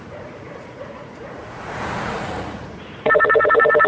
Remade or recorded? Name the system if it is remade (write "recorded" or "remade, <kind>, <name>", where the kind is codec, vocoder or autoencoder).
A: remade, vocoder, Vocos